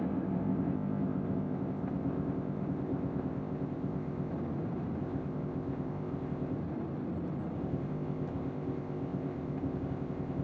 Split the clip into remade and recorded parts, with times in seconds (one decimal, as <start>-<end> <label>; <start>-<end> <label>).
0.0-4.3 remade; 4.3-5.0 recorded; 5.0-6.6 remade; 6.6-7.6 recorded; 7.6-10.4 remade